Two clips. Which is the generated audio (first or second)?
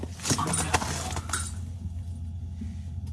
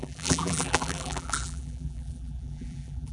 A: second